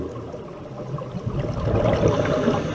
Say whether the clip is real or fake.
real